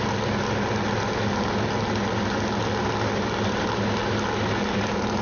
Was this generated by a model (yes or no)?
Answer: no